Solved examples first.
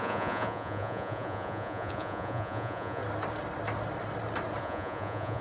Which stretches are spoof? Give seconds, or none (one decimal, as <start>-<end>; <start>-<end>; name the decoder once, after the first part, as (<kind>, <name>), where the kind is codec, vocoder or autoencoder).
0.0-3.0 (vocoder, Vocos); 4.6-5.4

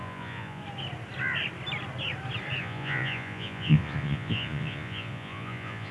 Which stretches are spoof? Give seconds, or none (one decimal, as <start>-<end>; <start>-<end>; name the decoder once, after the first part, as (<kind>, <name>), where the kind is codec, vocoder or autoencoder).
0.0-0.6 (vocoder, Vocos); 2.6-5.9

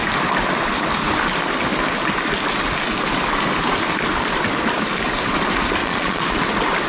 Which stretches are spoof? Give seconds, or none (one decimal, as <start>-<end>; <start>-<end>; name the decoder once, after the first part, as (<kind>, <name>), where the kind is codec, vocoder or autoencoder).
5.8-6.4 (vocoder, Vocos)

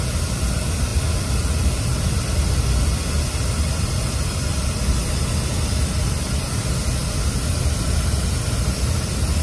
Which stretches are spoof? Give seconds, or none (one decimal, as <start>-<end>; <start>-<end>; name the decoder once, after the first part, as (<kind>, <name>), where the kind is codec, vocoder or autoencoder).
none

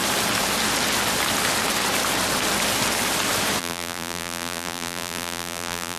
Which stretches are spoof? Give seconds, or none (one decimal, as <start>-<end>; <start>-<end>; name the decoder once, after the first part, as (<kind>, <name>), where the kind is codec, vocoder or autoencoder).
3.6-6.0 (vocoder, BigVGAN v2)